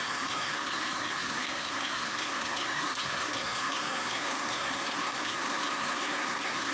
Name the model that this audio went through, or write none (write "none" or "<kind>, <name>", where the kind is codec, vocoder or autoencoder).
codec, SNAC